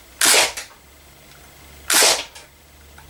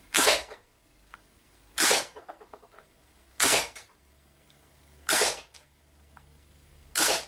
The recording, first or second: first